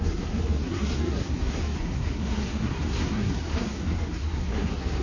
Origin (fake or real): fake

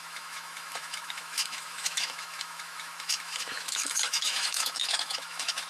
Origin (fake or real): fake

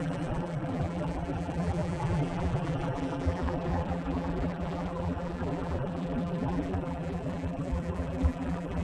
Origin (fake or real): fake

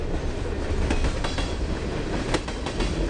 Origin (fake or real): real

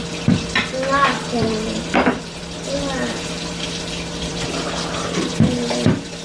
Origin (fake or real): fake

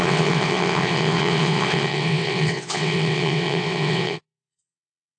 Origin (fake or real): fake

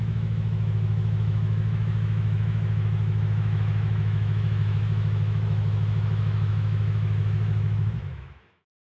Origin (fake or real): fake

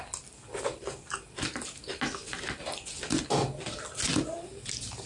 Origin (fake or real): real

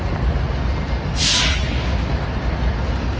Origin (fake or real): real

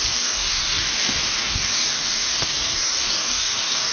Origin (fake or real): fake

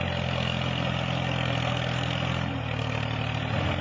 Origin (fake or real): real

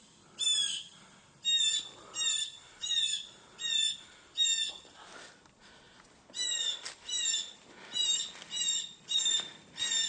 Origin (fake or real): real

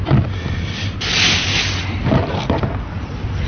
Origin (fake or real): real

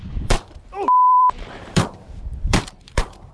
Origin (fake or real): fake